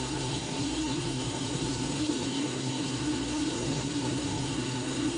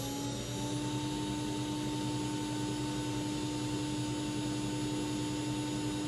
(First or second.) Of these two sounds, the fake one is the first